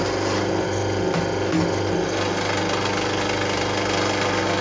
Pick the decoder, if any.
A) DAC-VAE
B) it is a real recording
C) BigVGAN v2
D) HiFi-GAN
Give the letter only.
B